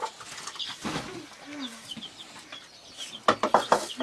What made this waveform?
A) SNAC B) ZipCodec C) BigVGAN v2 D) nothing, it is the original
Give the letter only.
D